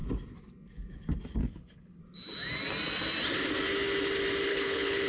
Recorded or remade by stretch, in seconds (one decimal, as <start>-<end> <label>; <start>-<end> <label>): 0.0-1.4 recorded; 1.4-2.0 remade; 2.0-4.5 recorded; 4.5-5.1 remade